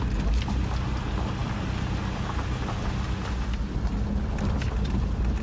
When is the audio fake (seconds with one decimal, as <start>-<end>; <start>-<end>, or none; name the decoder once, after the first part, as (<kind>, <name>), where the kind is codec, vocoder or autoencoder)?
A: none